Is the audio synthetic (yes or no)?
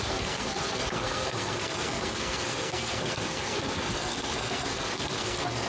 yes